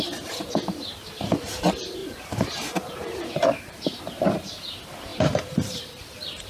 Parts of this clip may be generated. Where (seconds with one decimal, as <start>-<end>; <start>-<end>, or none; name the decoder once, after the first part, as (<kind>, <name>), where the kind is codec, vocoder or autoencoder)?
2.0-4.0 (vocoder, BigVGAN v2); 5.1-6.0